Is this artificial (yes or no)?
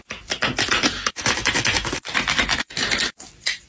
yes